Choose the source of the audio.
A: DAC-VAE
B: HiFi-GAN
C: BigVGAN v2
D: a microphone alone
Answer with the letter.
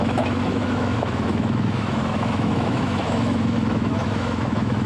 A